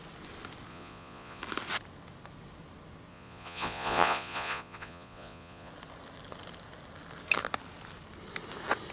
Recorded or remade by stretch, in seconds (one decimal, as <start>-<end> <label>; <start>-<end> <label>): 0.0-0.7 recorded; 0.7-1.4 remade; 1.4-3.1 recorded; 3.1-5.7 remade; 5.7-8.9 recorded